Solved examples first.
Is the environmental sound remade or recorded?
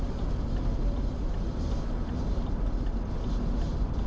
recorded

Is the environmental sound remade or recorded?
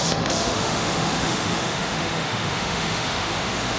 remade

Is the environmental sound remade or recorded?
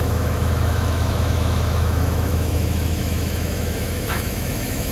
remade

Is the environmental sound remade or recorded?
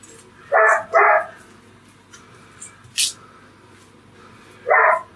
recorded